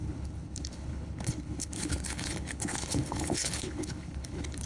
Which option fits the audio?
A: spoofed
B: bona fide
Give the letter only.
A